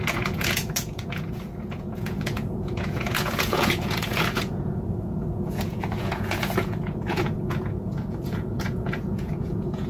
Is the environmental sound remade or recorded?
remade